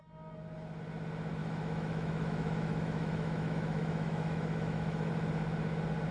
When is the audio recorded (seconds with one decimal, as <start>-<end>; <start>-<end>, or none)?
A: 0.0-1.4; 5.1-6.1